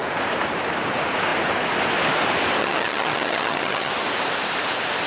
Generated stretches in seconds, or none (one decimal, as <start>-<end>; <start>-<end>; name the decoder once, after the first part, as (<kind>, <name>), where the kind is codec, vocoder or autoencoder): 2.6-3.9 (vocoder, HiFi-GAN)